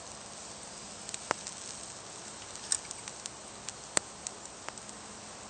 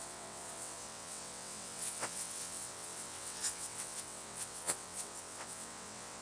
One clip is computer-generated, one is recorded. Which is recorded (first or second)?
first